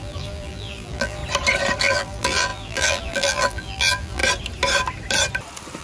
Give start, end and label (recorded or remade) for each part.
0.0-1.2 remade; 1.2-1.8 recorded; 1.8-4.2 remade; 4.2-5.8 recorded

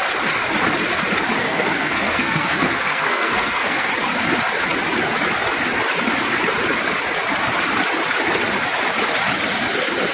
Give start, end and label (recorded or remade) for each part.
0.0-1.4 recorded; 1.4-3.9 remade; 3.9-10.1 recorded

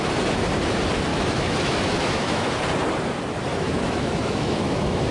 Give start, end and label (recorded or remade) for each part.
0.0-1.1 recorded; 1.1-2.5 remade; 2.5-3.5 recorded; 3.5-5.1 remade

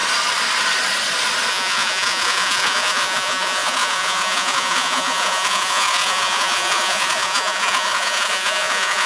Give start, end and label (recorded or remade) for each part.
0.0-1.5 recorded; 1.5-9.1 remade

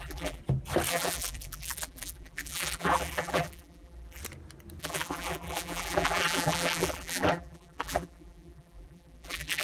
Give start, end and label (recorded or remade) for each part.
0.0-0.4 remade; 0.4-0.9 recorded; 0.9-4.2 remade; 4.2-4.8 recorded; 4.8-9.6 remade

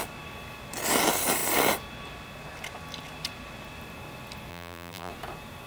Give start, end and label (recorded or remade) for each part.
0.0-4.5 recorded; 4.5-5.1 remade; 5.1-5.7 recorded

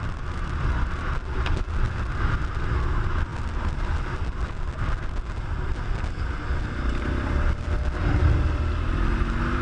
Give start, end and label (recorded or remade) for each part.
0.0-3.3 recorded; 3.3-3.9 remade; 3.9-9.6 recorded

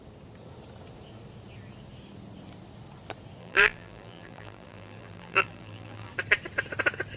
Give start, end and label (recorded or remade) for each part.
0.0-3.4 recorded; 3.4-6.1 remade; 6.1-7.2 recorded